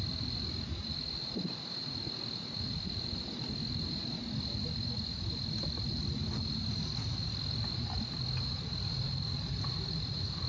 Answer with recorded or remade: recorded